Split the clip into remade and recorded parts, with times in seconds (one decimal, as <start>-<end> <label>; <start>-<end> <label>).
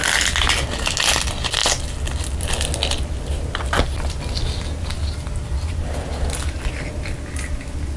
0.0-8.0 recorded